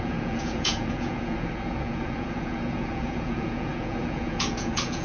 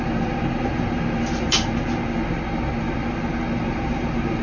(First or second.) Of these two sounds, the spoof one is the first